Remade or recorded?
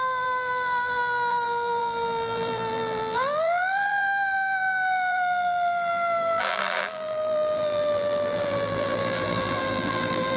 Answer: remade